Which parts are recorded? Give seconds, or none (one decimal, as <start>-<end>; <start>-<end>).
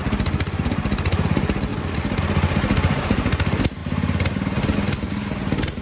0.0-5.8